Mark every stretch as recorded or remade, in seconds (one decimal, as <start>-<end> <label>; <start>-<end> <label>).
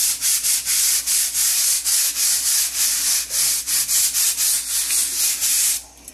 0.0-6.1 recorded